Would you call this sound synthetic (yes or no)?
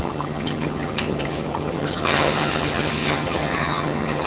yes